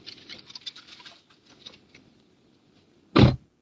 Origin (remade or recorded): recorded